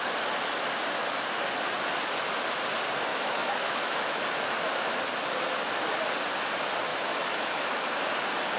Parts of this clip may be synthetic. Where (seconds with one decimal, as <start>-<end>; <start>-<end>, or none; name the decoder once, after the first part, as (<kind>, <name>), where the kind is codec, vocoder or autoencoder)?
3.1-4.2 (autoencoder, DAC-VAE); 6.9-8.0